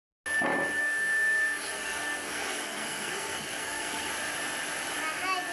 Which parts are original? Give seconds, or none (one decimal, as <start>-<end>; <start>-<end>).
0.0-0.8; 4.1-5.5

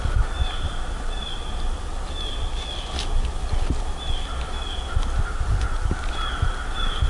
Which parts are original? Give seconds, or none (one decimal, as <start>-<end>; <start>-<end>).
0.0-7.1

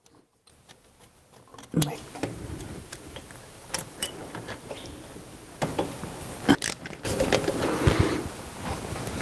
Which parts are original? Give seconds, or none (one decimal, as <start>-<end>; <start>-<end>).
1.5-2.1; 4.2-8.1